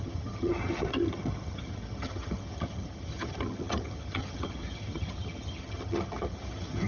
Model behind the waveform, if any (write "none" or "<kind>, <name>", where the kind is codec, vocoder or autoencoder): vocoder, HiFi-GAN